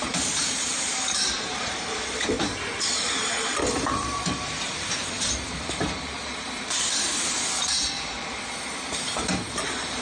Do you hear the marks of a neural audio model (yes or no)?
yes